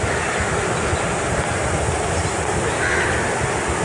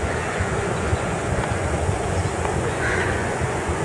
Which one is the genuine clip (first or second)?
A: first